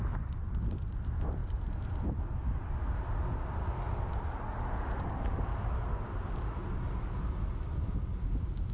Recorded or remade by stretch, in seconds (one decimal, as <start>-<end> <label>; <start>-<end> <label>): 0.0-8.7 recorded